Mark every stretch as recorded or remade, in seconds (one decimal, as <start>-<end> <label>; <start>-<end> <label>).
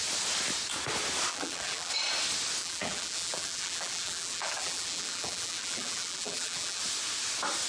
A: 0.0-1.3 recorded; 1.3-1.9 remade; 1.9-2.6 recorded; 2.6-6.8 remade; 6.8-7.7 recorded